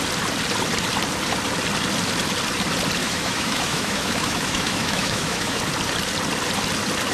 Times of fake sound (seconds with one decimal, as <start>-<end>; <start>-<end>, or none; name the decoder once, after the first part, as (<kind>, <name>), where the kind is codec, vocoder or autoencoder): 3.0-5.6 (autoencoder, DAC-VAE)